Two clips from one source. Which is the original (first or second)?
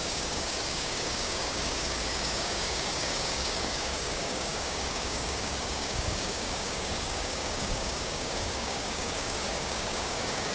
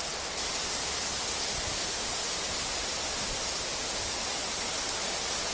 second